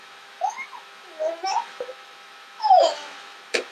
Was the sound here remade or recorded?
remade